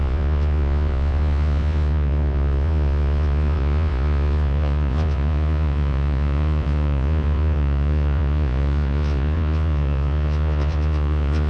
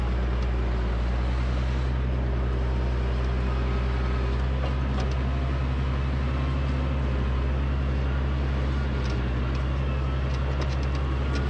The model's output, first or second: first